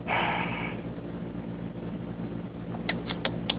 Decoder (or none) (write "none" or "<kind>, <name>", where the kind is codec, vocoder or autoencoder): none